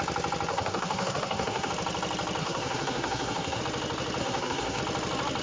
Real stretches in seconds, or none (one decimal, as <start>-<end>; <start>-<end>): 0.0-0.5; 1.7-2.4; 3.6-4.2; 4.8-5.4